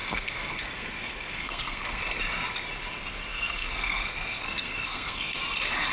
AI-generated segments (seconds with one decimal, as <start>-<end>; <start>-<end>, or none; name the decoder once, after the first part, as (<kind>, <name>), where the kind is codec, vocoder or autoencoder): 0.0-2.0 (codec, SNAC); 3.3-5.4